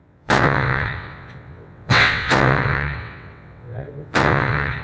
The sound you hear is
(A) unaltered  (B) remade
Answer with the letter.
B